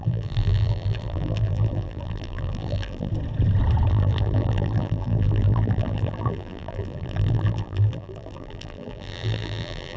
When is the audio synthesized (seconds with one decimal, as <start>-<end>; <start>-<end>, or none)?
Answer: 0.0-3.1; 3.9-10.0